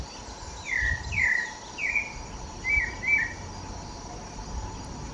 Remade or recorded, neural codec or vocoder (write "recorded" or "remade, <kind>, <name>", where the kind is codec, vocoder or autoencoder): recorded